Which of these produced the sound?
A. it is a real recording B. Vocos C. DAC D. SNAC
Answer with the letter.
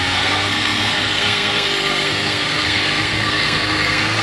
D